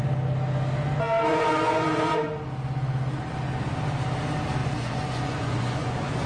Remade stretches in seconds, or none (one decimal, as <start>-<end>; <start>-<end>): 1.3-2.3; 4.6-6.3